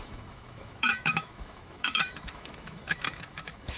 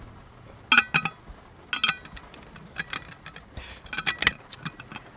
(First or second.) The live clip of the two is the second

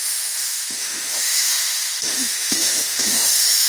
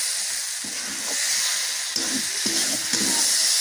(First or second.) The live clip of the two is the second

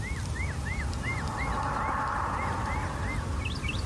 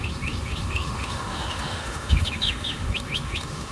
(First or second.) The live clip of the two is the first